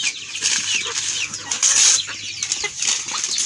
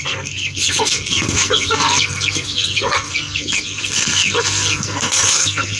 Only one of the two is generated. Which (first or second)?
second